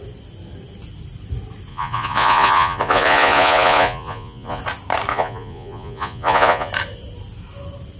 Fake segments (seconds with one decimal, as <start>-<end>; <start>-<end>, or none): 1.7-4.6; 5.1-6.7